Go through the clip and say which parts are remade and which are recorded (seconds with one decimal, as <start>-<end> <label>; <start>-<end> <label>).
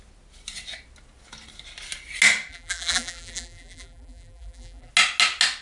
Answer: 0.0-2.5 recorded; 2.5-4.9 remade; 4.9-5.6 recorded